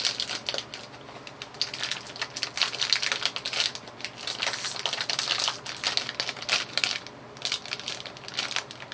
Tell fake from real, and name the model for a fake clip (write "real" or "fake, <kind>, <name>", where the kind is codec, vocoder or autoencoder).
real